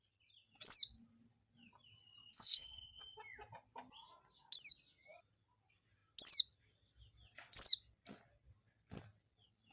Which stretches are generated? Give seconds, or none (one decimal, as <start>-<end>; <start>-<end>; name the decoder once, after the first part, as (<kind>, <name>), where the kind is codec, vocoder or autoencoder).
2.3-3.0 (codec, SNAC)